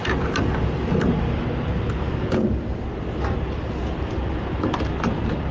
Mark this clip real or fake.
real